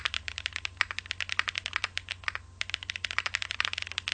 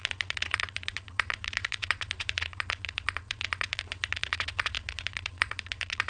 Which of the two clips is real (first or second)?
first